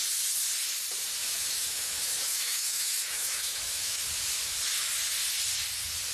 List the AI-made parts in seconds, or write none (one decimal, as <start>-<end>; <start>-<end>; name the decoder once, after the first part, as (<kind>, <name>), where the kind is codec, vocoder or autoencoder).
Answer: 1.2-4.0 (autoencoder, DAC-VAE)